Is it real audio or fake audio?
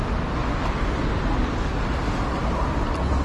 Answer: real